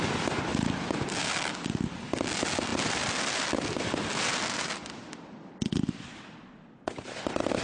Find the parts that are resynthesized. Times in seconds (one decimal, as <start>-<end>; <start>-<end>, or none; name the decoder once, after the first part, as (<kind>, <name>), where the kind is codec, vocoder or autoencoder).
2.7-5.5 (vocoder, BigVGAN v2)